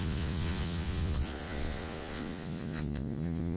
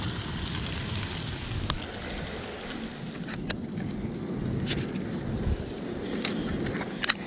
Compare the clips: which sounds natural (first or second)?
second